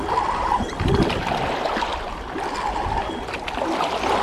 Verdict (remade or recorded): recorded